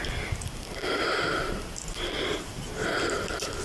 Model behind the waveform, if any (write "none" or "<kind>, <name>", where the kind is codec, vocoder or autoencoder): none